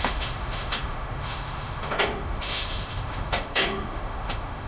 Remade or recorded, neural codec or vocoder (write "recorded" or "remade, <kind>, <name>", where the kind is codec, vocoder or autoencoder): remade, autoencoder, DAC-VAE